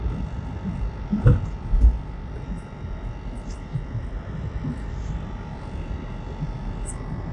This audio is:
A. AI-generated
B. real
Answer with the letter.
B